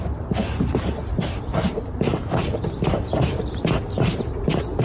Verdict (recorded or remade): remade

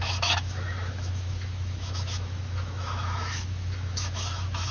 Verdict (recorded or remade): remade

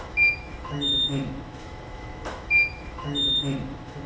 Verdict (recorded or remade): remade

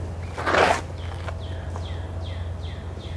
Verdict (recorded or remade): recorded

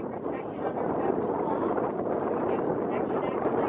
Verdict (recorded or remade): recorded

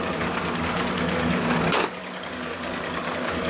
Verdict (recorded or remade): remade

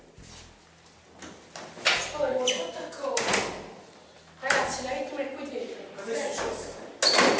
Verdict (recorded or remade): recorded